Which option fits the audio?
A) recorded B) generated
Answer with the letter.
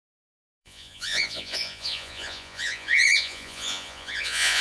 B